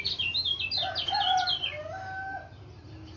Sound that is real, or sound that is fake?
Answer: real